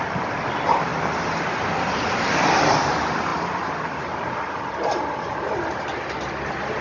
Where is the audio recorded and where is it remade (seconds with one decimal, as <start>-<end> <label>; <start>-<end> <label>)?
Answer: 0.0-6.8 recorded